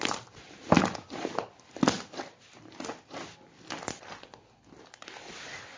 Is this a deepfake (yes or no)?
no